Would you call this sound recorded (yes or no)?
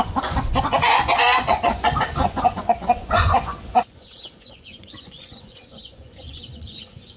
no